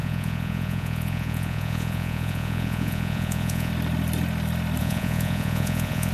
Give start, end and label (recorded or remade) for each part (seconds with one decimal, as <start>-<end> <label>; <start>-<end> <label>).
0.0-3.7 remade; 3.7-4.8 recorded; 4.8-6.1 remade